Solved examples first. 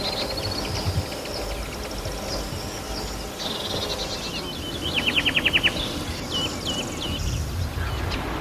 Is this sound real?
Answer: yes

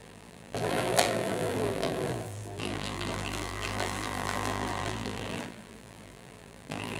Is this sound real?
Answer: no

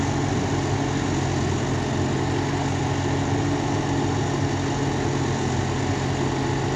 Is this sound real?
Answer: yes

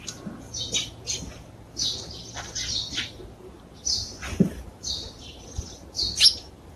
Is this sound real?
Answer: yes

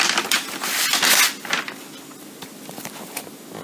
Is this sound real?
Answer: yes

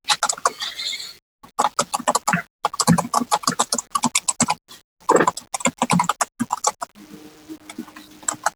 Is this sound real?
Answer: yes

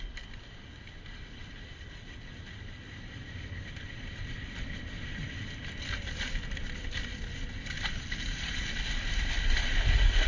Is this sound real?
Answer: yes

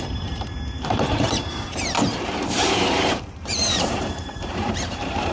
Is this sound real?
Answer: no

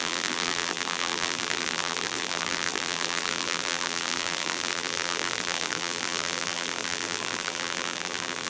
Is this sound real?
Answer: no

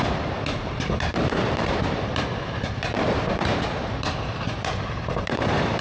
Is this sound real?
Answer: no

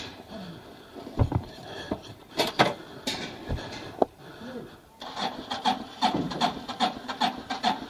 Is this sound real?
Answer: no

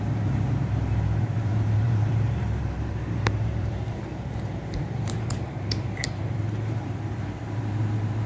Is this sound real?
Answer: no